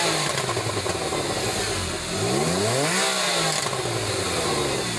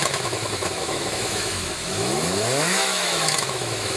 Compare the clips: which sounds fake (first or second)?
second